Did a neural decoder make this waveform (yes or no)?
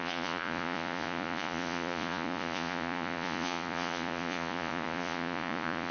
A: yes